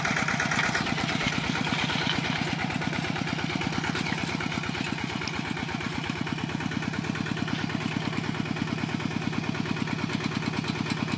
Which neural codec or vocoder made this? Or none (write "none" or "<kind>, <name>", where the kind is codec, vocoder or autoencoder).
none